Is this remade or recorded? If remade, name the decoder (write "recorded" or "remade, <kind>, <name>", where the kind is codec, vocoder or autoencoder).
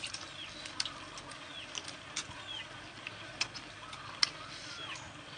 recorded